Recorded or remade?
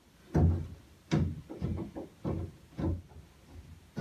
recorded